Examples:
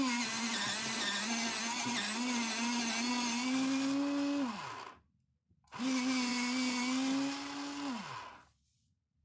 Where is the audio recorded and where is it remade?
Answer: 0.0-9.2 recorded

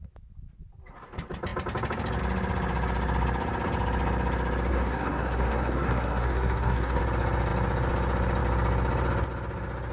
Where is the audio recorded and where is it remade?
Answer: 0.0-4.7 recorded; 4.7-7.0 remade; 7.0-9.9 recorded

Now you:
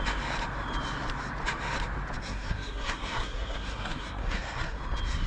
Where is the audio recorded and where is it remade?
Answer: 0.0-2.2 recorded; 2.2-4.8 remade; 4.8-5.3 recorded